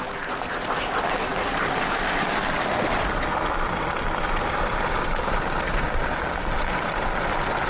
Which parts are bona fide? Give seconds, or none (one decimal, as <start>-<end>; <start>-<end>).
0.0-7.7